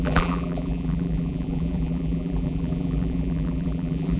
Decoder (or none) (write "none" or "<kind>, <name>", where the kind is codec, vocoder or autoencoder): vocoder, BigVGAN v2